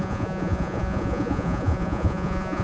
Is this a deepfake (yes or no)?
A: yes